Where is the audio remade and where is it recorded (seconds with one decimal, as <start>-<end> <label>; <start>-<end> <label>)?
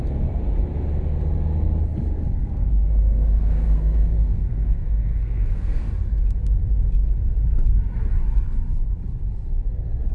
0.0-2.4 recorded; 2.4-5.9 remade; 5.9-10.1 recorded